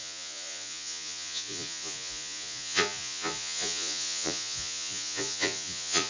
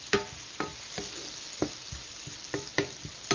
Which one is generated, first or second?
first